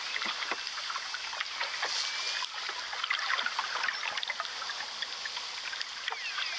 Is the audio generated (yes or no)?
no